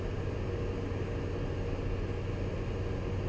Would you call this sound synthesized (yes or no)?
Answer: no